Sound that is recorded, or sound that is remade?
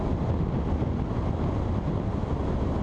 recorded